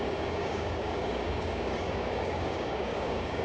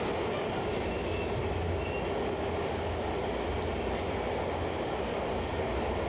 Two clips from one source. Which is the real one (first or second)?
second